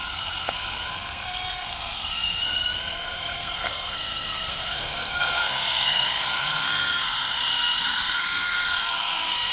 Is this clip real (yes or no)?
no